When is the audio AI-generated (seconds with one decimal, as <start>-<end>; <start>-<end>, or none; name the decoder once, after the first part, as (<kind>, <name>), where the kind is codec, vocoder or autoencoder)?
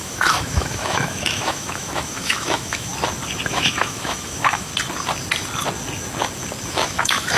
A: 0.0-2.9 (autoencoder, DAC-VAE); 3.5-4.7; 6.7-7.4